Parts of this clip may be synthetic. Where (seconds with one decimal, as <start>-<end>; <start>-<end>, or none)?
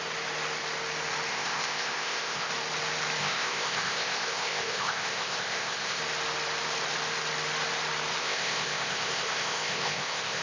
1.3-2.5; 3.2-6.0; 8.2-10.4